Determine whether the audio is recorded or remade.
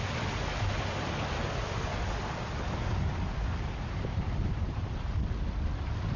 recorded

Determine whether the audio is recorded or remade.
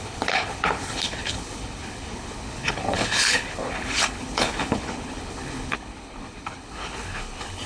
remade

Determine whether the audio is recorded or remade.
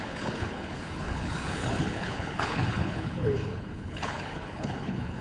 remade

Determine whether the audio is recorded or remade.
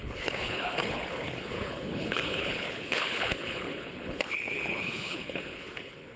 remade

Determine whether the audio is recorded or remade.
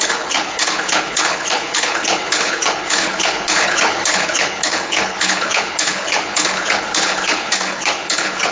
remade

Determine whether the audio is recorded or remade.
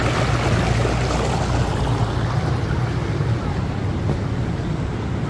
recorded